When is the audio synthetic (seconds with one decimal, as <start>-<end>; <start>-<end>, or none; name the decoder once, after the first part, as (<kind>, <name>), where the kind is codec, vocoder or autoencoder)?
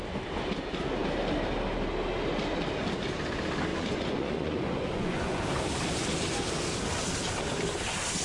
3.7-5.4 (vocoder, Vocos)